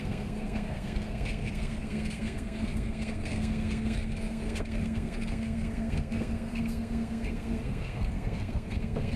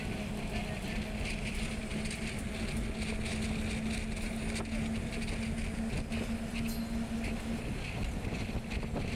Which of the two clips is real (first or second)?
second